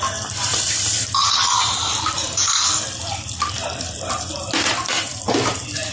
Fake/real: fake